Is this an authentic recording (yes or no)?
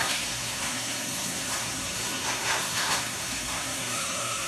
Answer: no